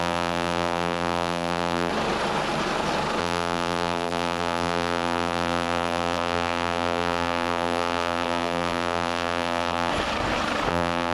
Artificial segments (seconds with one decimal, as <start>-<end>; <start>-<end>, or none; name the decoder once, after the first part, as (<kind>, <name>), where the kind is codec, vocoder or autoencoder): 0.0-1.9 (vocoder, BigVGAN v2); 3.2-9.9; 10.7-11.1